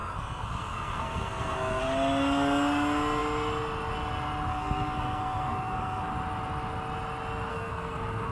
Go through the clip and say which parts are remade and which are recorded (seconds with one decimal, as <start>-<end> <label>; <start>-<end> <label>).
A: 0.0-1.8 remade; 1.8-4.5 recorded; 4.5-6.1 remade; 6.1-7.5 recorded; 7.5-8.3 remade